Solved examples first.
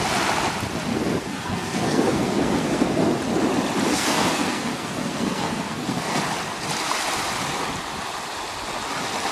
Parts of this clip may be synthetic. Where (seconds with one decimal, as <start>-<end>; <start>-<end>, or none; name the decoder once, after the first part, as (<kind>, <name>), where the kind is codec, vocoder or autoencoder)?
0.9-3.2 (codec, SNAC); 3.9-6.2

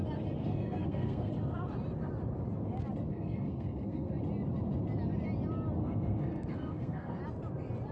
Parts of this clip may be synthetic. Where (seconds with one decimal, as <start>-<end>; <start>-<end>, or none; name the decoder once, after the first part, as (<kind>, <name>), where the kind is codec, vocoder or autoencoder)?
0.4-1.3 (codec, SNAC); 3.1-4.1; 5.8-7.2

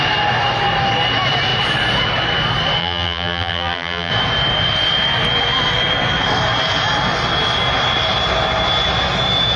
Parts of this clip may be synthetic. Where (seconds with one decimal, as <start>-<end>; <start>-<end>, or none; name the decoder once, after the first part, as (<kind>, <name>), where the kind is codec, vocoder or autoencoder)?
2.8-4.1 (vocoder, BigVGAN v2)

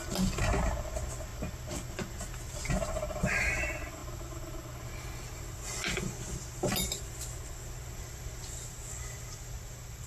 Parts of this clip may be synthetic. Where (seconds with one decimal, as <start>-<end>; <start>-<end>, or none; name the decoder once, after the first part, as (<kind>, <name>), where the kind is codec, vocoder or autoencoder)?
none

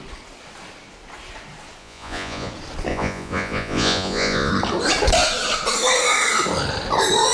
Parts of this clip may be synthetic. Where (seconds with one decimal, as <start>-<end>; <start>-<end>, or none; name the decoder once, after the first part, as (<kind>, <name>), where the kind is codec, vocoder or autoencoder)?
1.8-2.5 (vocoder, Vocos); 2.9-4.5

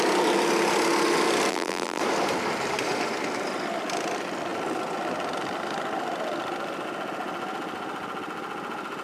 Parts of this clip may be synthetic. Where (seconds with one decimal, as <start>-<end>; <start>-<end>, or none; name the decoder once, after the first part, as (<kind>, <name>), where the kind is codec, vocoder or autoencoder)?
1.5-2.0 (vocoder, BigVGAN v2)

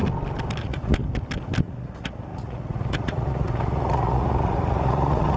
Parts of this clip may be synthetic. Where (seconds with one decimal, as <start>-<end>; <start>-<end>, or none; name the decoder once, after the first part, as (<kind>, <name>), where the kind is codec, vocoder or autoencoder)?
0.6-1.0 (vocoder, Vocos); 1.6-5.4